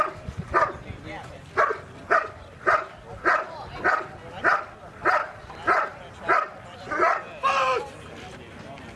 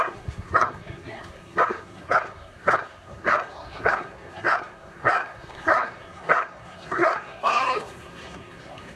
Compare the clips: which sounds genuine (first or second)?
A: first